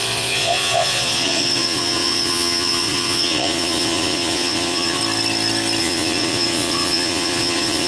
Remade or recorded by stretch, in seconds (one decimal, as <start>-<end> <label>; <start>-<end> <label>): 0.0-5.0 remade; 5.0-5.8 recorded; 5.8-7.9 remade